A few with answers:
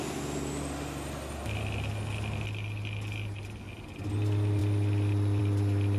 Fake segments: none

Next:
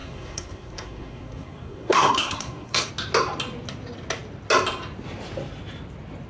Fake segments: 0.0-2.9

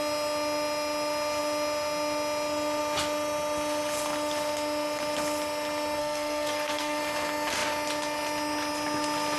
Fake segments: 6.0-7.0

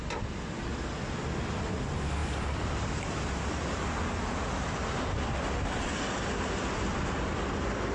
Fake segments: none

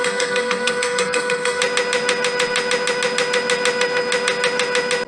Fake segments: 0.0-1.6

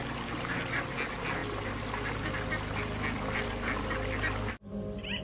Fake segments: none